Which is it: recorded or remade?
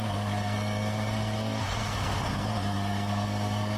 remade